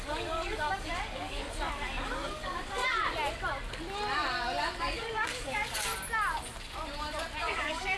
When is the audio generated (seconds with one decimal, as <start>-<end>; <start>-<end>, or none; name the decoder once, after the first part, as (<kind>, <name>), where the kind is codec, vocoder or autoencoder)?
0.0-2.8 (codec, DAC); 4.8-5.9; 7.4-8.0